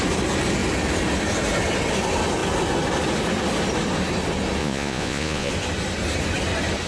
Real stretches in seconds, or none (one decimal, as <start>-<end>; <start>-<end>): 0.0-4.6; 5.5-6.9